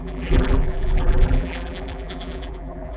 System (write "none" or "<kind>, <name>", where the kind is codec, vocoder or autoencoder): vocoder, BigVGAN v2